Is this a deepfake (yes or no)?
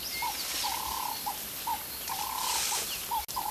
no